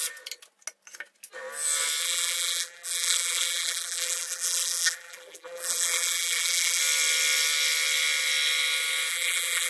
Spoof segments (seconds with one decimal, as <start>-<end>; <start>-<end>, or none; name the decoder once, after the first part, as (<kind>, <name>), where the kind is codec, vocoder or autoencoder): 2.0-6.8 (vocoder, BigVGAN v2); 9.1-9.7

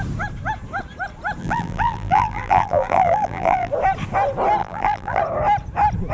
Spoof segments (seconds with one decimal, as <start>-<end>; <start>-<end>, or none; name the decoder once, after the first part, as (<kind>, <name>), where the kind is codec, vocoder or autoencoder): 1.4-3.7 (vocoder, BigVGAN v2); 4.6-5.2

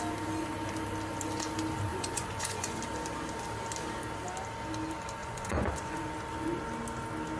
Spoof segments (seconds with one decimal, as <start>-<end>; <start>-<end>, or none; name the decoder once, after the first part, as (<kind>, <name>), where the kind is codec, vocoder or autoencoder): 1.9-2.8 (vocoder, Vocos); 5.2-6.1

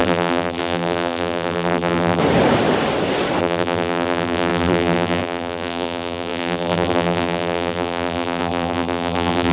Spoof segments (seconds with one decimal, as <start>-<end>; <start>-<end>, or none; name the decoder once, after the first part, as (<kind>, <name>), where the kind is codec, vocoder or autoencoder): 0.0-2.2 (vocoder, BigVGAN v2); 3.4-9.5